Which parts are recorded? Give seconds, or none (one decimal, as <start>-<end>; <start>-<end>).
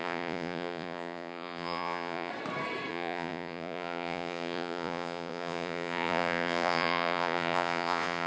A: 2.3-2.9